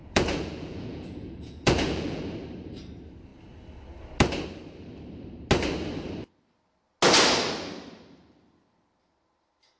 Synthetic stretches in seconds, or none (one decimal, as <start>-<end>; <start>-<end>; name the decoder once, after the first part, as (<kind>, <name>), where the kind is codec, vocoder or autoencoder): 0.0-2.2 (vocoder, Vocos)